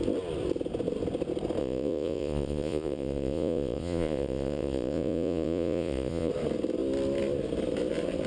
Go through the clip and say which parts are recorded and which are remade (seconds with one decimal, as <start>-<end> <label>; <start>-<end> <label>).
0.0-1.6 recorded; 1.6-6.3 remade; 6.3-8.3 recorded